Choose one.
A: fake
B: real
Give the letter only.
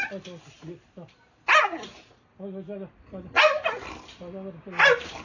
B